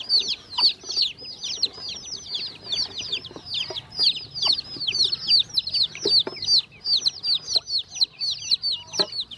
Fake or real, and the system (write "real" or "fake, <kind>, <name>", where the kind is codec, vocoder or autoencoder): real